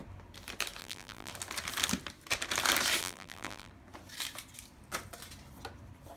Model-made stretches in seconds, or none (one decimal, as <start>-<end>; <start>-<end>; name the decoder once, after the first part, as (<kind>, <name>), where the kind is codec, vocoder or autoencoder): 0.8-1.3 (vocoder, BigVGAN v2); 3.0-3.7